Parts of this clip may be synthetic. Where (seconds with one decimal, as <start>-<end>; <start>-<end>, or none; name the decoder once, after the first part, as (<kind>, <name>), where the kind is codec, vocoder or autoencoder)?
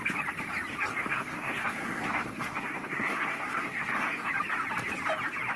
0.9-4.3 (codec, SNAC)